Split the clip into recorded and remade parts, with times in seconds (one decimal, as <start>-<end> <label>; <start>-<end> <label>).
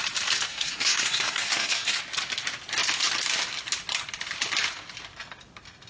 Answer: 0.0-0.5 recorded; 0.5-2.0 remade; 2.0-5.9 recorded